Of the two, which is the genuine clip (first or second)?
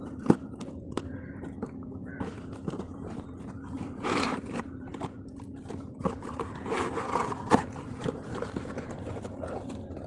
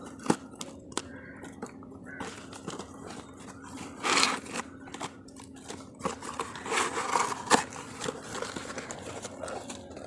second